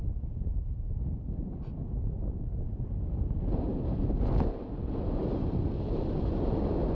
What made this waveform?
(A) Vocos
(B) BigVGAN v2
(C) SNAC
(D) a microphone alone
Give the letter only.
D